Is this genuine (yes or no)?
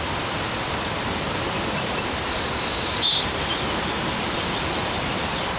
no